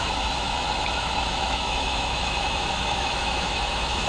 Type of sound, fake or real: fake